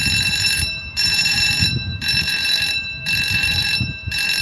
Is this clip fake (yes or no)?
yes